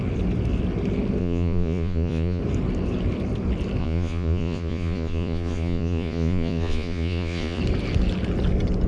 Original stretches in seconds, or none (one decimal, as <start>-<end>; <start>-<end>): 0.0-1.2; 2.4-3.8; 7.6-8.9